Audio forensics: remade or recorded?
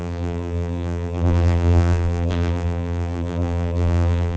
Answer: remade